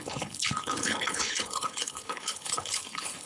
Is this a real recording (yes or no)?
no